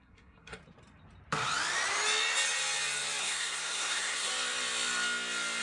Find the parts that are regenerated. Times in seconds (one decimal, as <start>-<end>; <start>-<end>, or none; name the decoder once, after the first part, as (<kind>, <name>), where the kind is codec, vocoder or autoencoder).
0.0-0.6 (codec, SNAC); 3.2-4.3